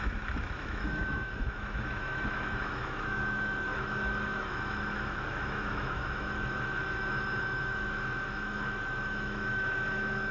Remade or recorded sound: remade